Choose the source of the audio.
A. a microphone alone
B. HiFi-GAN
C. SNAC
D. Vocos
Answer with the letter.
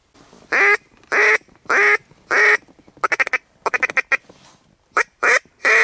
A